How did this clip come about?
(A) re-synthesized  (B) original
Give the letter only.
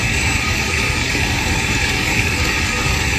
A